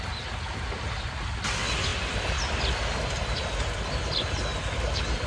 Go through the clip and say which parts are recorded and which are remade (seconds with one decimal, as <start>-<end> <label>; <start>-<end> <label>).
0.0-5.3 recorded